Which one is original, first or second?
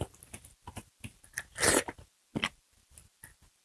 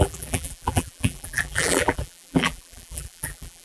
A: first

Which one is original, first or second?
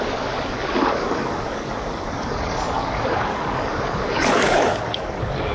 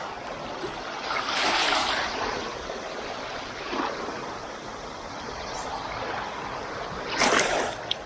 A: second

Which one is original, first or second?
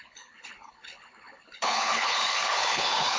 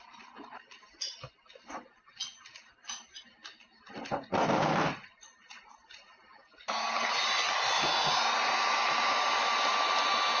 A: second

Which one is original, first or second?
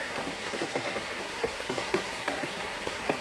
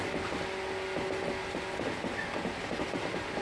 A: second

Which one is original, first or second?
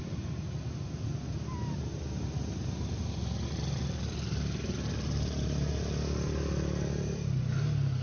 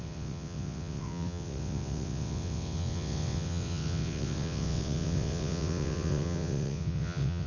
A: first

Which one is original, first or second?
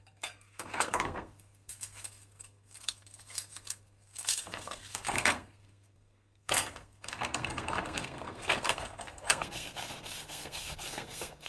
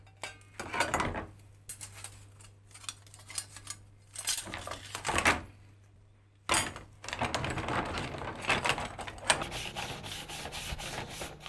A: second